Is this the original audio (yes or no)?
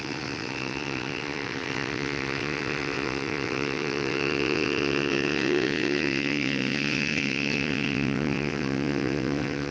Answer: no